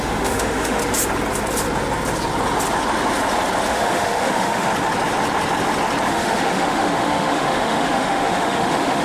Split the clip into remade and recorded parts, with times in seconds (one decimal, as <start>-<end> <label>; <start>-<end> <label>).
0.0-0.8 remade; 0.8-3.7 recorded; 3.7-4.7 remade; 4.7-6.1 recorded; 6.1-9.0 remade